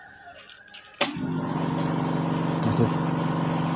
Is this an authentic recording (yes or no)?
yes